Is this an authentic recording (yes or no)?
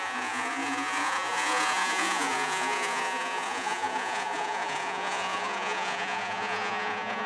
no